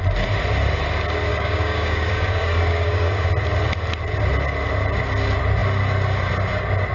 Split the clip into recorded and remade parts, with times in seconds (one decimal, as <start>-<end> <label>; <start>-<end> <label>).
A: 0.0-1.3 recorded; 1.3-3.3 remade; 3.3-6.9 recorded